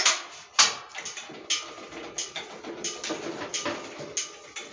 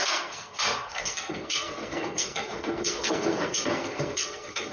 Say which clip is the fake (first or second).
second